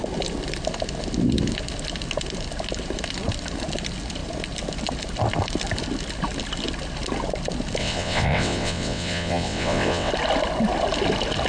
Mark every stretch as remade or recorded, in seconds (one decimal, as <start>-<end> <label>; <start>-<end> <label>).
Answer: 0.0-7.8 recorded; 7.8-10.1 remade; 10.1-11.5 recorded